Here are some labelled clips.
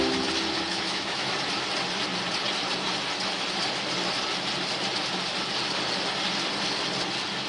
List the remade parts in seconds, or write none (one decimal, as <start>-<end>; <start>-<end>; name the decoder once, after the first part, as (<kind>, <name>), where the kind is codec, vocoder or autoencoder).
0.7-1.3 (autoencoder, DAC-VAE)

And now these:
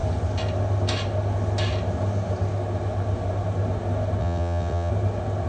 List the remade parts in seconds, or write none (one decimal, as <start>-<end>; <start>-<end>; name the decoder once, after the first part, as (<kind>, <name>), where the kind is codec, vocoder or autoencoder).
4.2-4.9 (vocoder, WaveNeXt)

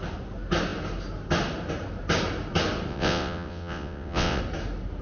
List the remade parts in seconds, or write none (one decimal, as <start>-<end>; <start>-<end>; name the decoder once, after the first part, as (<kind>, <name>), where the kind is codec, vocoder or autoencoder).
2.9-4.4 (vocoder, WaveNeXt)